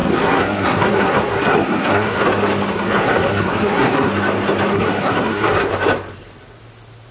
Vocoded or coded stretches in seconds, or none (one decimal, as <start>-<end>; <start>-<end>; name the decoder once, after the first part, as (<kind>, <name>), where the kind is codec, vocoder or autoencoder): 0.0-2.2 (codec, SNAC); 2.7-4.1; 4.7-5.7